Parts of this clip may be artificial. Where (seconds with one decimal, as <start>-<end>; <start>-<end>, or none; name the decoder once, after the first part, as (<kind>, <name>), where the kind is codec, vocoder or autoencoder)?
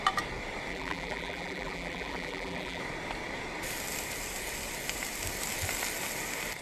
0.7-2.8 (vocoder, BigVGAN v2)